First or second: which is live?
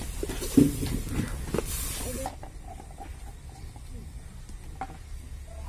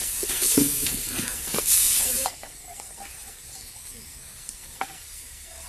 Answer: first